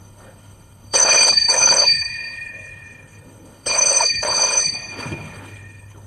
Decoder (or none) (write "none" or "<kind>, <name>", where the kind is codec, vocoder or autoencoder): codec, HILCodec